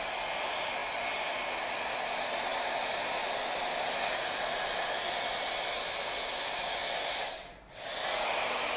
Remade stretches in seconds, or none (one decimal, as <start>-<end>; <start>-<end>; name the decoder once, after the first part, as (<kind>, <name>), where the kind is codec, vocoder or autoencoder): none